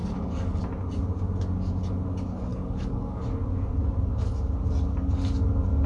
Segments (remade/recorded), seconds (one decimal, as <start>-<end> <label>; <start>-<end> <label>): 0.0-0.6 remade; 0.6-2.5 recorded; 2.5-3.2 remade; 3.2-5.9 recorded